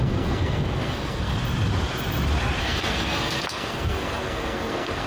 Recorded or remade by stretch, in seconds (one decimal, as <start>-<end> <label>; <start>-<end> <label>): 0.0-1.3 remade; 1.3-2.6 recorded; 2.6-5.1 remade